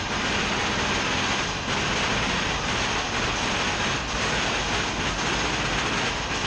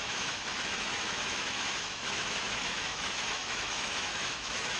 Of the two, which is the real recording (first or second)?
first